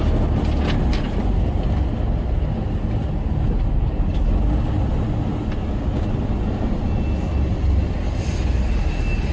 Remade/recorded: recorded